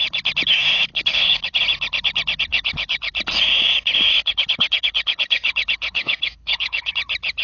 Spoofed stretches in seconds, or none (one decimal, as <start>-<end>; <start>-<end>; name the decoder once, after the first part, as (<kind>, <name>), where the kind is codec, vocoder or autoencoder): 0.9-1.6 (codec, HILCodec); 2.5-3.1; 4.1-6.9